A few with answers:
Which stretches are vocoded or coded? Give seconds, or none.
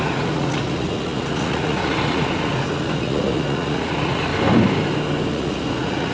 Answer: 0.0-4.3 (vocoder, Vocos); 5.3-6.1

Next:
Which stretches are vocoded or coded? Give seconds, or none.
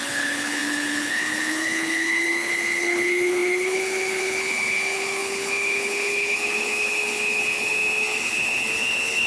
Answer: 0.0-9.3 (codec, HILCodec)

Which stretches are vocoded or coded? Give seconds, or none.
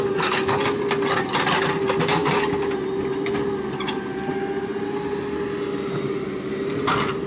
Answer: none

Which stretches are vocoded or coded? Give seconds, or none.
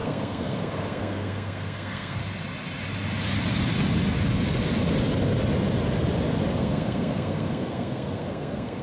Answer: 0.0-2.2 (codec, SNAC); 6.6-8.8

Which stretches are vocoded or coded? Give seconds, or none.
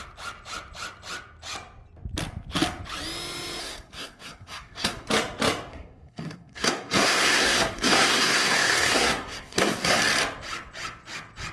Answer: 3.6-5.1 (codec, SNAC); 5.7-10.0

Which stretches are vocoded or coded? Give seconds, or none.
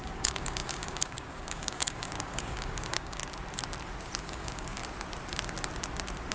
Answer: 0.0-3.2 (codec, DAC); 4.2-4.8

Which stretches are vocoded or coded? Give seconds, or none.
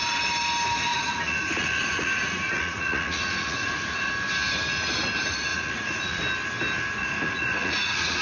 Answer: 0.9-4.1 (vocoder, Vocos); 5.5-6.2; 7.0-8.2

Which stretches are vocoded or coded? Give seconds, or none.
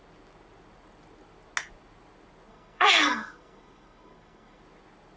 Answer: 2.5-4.6 (codec, SNAC)